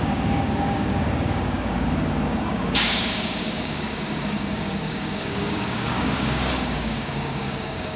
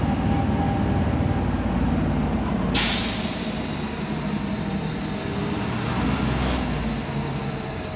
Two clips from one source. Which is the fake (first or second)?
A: first